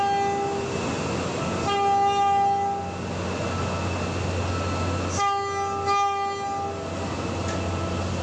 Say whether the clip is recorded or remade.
recorded